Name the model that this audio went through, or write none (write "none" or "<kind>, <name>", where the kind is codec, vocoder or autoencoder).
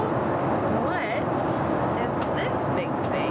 none